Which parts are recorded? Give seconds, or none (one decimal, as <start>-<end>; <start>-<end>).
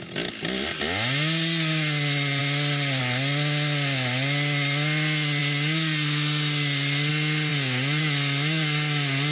0.0-9.3